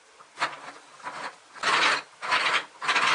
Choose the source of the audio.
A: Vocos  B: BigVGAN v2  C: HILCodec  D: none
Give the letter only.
D